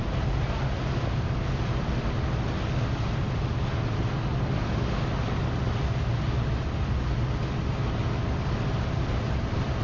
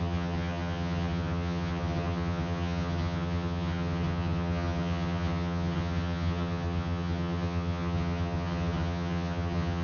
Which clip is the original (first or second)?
first